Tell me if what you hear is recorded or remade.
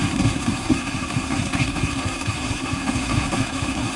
remade